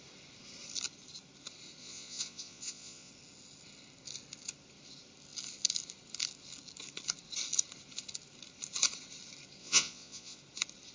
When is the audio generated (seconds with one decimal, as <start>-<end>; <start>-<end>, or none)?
1.8-3.1; 9.6-10.4